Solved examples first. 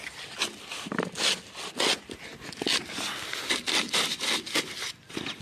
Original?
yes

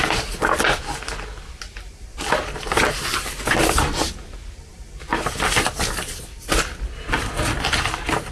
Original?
yes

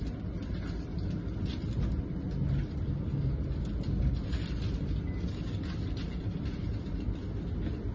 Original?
yes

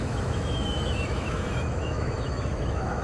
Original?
no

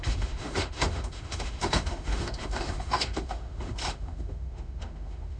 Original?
no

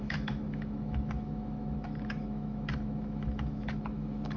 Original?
no